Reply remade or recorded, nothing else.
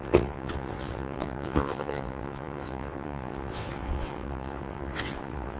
remade